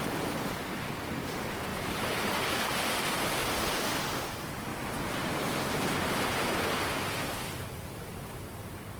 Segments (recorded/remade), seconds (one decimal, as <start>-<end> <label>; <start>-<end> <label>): 0.0-9.0 recorded